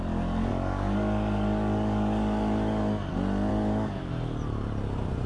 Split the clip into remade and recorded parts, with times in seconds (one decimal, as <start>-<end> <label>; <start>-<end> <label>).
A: 0.0-0.5 recorded; 0.5-3.1 remade; 3.1-3.5 recorded; 3.5-4.1 remade; 4.1-5.3 recorded